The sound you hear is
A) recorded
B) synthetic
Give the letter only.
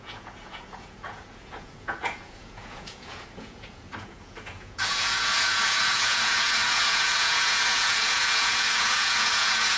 B